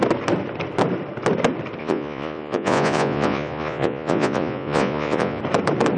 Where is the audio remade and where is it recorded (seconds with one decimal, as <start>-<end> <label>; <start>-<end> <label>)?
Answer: 0.0-1.8 recorded; 1.8-5.4 remade; 5.4-6.0 recorded